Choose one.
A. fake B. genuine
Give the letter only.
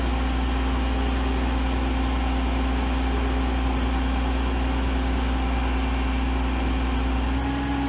B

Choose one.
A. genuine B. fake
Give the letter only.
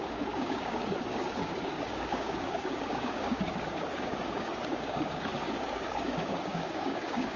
B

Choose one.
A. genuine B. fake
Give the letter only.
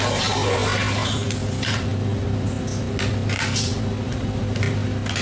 A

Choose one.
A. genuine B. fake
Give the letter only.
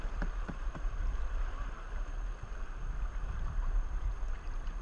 B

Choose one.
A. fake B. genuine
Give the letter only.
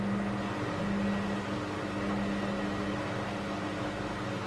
B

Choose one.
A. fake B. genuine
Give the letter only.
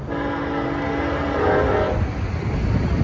B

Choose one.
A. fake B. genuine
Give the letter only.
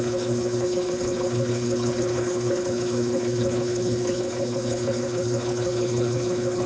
A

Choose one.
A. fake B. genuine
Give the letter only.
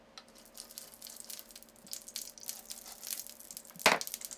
B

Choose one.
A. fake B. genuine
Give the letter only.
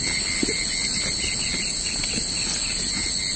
B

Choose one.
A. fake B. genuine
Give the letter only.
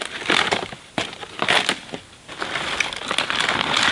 B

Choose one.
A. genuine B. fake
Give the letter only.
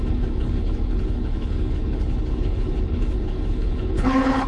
B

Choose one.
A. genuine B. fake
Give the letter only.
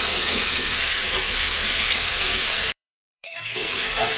B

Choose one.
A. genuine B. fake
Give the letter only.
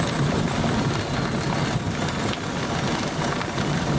A